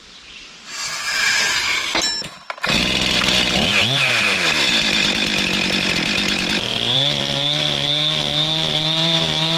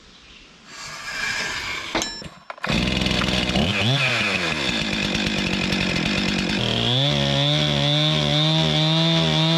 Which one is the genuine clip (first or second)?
second